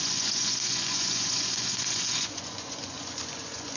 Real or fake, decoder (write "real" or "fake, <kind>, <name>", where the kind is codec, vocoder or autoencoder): fake, vocoder, Vocos